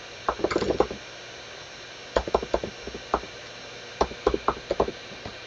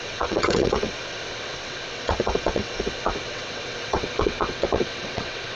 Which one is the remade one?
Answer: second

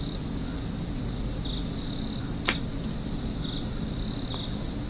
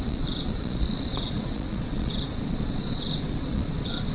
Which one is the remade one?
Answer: second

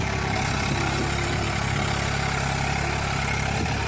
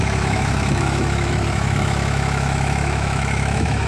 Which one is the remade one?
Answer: second